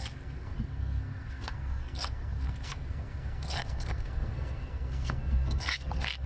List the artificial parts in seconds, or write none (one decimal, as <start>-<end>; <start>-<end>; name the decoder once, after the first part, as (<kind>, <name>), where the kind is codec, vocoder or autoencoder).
0.0-6.3 (codec, SNAC)

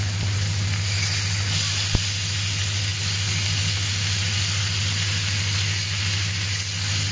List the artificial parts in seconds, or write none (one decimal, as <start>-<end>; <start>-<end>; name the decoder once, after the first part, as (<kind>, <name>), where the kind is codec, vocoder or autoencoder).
none

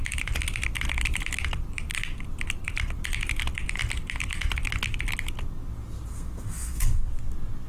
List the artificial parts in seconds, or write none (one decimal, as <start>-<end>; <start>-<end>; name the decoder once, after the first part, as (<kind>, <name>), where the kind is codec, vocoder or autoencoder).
6.1-7.1 (codec, SNAC)

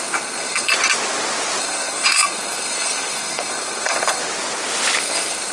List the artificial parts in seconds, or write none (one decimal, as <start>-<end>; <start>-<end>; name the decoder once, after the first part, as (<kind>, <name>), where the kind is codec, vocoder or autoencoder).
0.0-0.7 (codec, SNAC); 1.6-4.2; 5.0-5.5

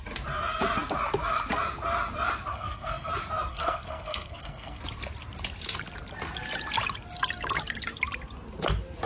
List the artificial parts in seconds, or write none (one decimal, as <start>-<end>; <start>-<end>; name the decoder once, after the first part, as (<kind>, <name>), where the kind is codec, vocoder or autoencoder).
2.5-3.1 (codec, SNAC); 3.5-4.8